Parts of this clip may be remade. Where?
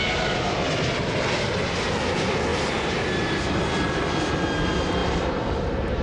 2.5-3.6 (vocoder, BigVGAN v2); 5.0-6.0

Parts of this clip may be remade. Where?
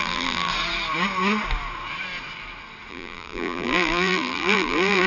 0.0-0.5 (vocoder, BigVGAN v2); 2.9-5.1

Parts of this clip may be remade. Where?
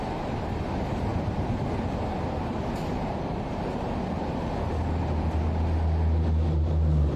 none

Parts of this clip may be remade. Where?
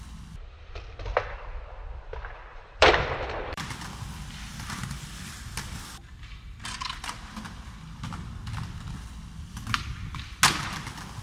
2.5-7.1 (vocoder, BigVGAN v2)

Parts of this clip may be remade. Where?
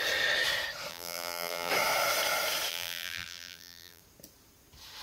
0.9-1.7 (vocoder, BigVGAN v2); 2.7-4.0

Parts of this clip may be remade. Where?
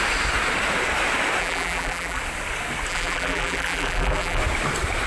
1.4-2.2 (vocoder, BigVGAN v2); 2.9-4.4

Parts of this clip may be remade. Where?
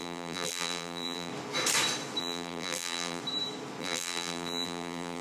0.0-1.3 (vocoder, BigVGAN v2); 2.2-3.2; 3.8-5.2